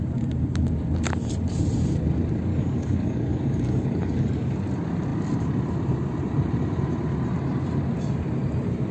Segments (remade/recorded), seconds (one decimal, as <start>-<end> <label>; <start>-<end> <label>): 0.0-2.5 recorded; 2.5-4.5 remade; 4.5-8.9 recorded